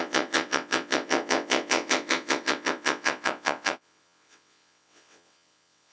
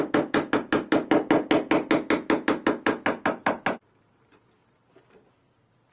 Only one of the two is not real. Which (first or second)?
first